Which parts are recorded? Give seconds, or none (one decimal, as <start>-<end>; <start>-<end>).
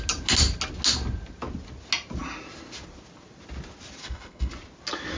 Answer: 0.0-4.0; 4.5-5.2